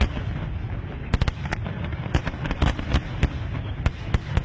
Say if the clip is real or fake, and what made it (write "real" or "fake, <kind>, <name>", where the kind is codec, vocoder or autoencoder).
real